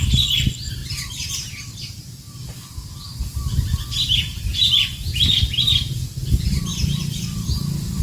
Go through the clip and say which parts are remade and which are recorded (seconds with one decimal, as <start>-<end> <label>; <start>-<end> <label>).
0.0-0.8 recorded; 0.8-1.3 remade; 1.3-8.0 recorded